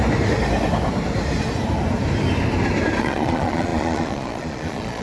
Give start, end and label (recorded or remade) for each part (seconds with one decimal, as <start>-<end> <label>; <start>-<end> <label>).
0.0-3.0 recorded; 3.0-5.0 remade